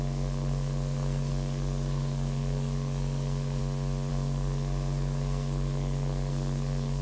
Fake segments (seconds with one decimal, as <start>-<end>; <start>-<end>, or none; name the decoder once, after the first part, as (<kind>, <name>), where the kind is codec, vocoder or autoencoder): 0.0-3.6 (codec, SNAC); 4.1-7.0